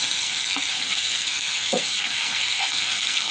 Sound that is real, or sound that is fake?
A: fake